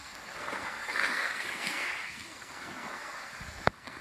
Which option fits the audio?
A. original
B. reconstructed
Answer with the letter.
B